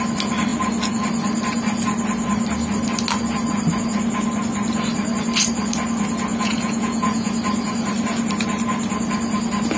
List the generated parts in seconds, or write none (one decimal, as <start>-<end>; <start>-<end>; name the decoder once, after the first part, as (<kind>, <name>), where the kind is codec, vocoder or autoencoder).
6.3-7.3 (vocoder, Vocos)